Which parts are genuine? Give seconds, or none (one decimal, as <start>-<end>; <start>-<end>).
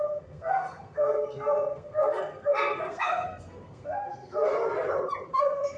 4.5-5.3